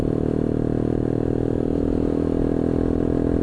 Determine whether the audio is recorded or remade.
recorded